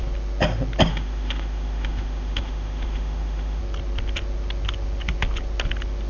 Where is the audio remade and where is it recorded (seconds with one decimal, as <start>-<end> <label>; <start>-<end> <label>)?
0.0-0.9 recorded; 0.9-3.6 remade; 3.6-6.1 recorded